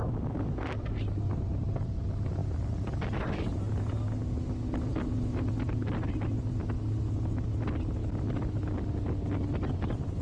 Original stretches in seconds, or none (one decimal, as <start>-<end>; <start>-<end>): 0.0-10.2